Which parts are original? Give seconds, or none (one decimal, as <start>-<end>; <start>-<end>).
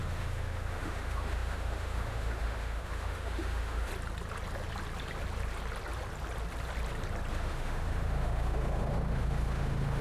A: 3.9-7.3